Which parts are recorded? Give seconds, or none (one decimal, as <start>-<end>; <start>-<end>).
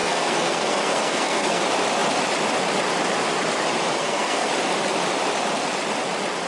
1.6-3.9; 4.5-6.5